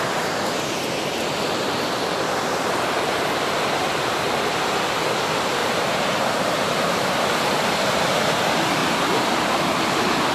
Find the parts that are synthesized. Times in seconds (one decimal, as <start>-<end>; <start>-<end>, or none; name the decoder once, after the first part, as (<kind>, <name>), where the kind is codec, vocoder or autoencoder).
5.6-7.0 (vocoder, BigVGAN v2)